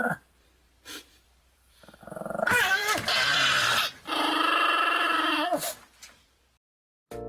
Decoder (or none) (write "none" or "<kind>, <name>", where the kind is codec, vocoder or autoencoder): vocoder, BigVGAN v2